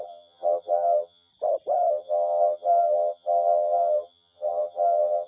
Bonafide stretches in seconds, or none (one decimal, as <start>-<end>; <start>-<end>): 1.3-1.9